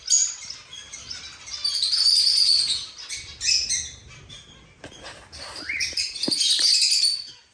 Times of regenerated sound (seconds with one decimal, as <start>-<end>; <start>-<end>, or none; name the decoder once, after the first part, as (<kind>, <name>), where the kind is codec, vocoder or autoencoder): none